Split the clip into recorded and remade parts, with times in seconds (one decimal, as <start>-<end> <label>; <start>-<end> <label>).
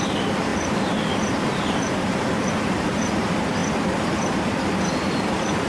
0.0-5.7 recorded